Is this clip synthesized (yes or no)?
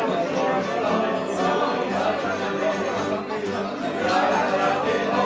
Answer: no